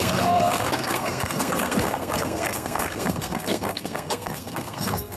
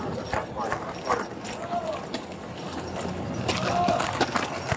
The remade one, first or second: first